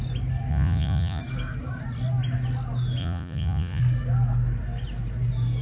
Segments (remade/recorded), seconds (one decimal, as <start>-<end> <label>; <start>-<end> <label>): 0.0-0.5 recorded; 0.5-1.2 remade; 1.2-3.0 recorded; 3.0-3.8 remade; 3.8-5.6 recorded